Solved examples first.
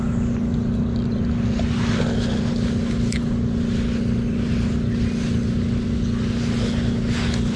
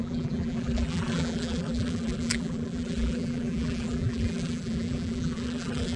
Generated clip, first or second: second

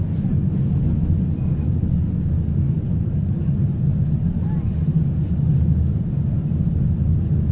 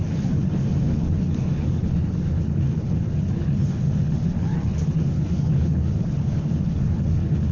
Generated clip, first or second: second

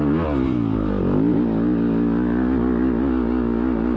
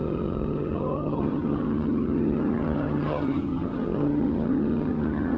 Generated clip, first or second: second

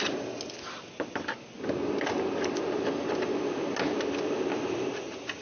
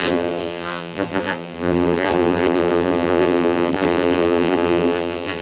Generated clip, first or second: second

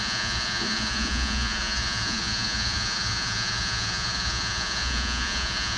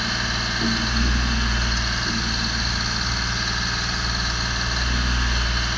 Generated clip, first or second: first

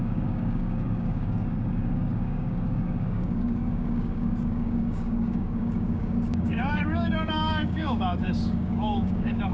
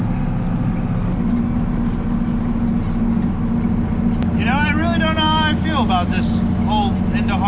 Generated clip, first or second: first